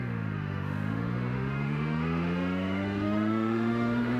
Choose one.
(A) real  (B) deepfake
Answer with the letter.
B